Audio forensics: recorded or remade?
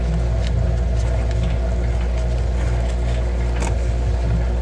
recorded